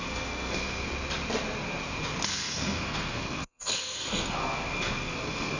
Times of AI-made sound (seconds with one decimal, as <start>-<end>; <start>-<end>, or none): 0.0-0.9; 2.3-5.6

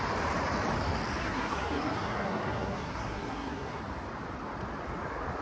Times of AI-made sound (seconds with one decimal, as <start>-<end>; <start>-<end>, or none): 1.2-3.8